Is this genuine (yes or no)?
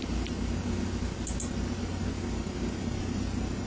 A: yes